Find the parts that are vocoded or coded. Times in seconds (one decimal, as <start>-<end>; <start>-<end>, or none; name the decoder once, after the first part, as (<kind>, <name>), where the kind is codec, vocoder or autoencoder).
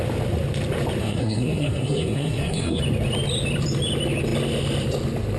1.0-2.8 (codec, SNAC)